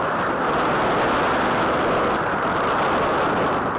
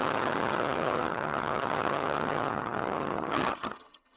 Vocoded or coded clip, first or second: second